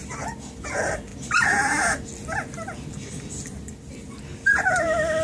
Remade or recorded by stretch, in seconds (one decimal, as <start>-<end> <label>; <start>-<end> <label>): 0.0-5.2 recorded